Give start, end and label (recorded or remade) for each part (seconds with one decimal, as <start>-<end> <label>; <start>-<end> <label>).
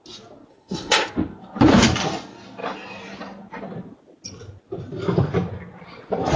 0.0-0.5 recorded; 0.5-1.1 remade; 1.1-6.4 recorded